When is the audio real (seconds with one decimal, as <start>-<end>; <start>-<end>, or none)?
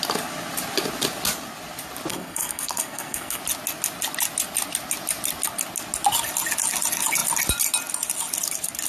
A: 0.0-2.1; 3.4-8.9